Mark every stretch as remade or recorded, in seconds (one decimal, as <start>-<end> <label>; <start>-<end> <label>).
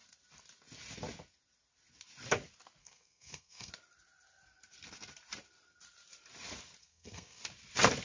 0.0-2.8 recorded; 2.8-3.7 remade; 3.7-6.8 recorded; 6.8-7.4 remade; 7.4-8.0 recorded